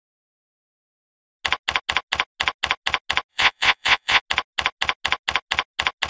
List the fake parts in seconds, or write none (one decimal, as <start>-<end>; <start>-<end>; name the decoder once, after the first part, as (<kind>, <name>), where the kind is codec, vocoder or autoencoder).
3.3-4.2 (vocoder, Vocos)

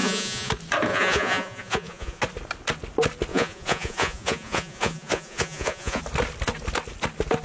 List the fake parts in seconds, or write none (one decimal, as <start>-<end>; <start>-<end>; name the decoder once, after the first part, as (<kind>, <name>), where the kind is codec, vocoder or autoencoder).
0.0-0.5 (vocoder, Vocos); 0.9-2.2; 3.3-6.0